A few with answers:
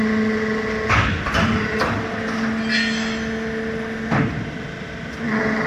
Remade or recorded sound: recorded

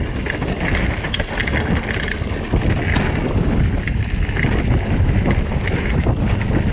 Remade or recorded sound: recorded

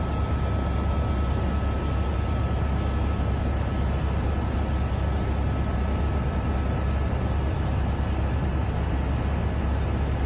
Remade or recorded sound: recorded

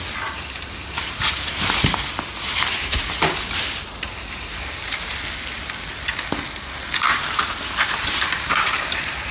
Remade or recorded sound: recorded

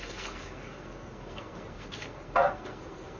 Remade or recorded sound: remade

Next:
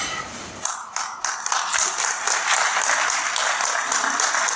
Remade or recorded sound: recorded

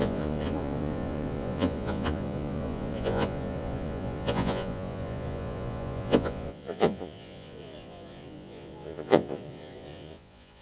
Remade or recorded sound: remade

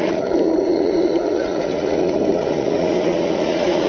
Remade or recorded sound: remade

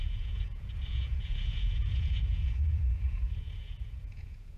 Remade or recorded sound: remade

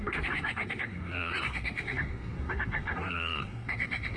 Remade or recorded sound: remade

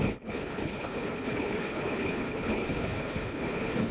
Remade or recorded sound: remade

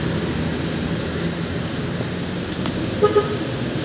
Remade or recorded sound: recorded